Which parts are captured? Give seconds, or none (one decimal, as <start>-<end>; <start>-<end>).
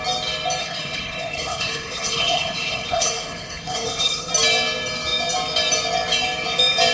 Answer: 0.0-0.6; 4.3-6.9